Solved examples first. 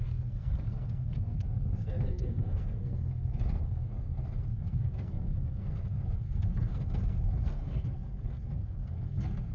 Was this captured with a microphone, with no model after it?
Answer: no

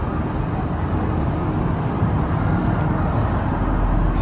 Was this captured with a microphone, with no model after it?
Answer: yes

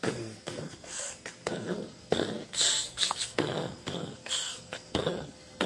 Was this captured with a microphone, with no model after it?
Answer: no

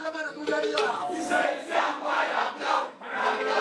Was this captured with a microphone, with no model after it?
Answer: no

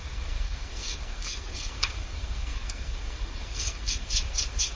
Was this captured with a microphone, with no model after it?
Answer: no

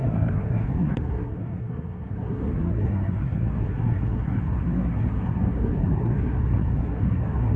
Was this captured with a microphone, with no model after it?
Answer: no